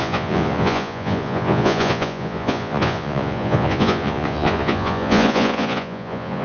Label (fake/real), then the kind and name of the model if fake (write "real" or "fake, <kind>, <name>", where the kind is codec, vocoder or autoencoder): fake, vocoder, Vocos